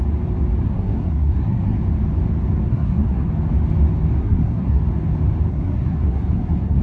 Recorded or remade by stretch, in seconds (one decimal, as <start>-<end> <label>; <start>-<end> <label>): 0.0-0.6 recorded; 0.6-1.8 remade; 1.8-2.7 recorded; 2.7-3.3 remade; 3.3-4.2 recorded; 4.2-4.8 remade; 4.8-5.5 recorded; 5.5-6.8 remade